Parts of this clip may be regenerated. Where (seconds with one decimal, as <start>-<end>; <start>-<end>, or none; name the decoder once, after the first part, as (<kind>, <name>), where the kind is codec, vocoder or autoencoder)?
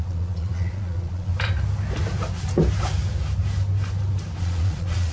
0.0-1.3 (vocoder, Vocos); 4.4-5.1